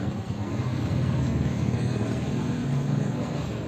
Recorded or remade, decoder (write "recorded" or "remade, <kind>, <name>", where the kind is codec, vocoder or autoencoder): remade, codec, SNAC